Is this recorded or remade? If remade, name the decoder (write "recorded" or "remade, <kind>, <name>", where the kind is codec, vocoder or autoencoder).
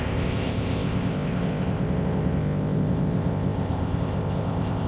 remade, codec, ZipCodec